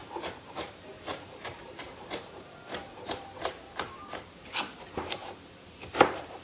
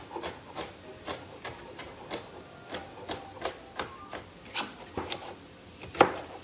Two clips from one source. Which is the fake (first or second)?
first